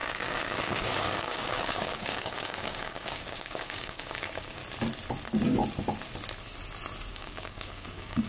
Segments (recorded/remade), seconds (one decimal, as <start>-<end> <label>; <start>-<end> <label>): 0.0-4.6 remade; 4.6-7.1 recorded; 7.1-8.3 remade